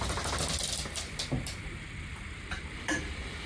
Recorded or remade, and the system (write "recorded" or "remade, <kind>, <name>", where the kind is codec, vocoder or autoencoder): recorded